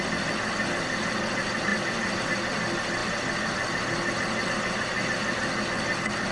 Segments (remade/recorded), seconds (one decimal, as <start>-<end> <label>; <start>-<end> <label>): 0.0-1.7 recorded; 1.7-2.2 remade; 2.2-6.3 recorded